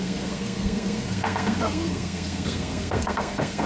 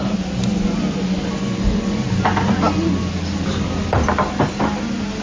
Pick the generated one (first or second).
first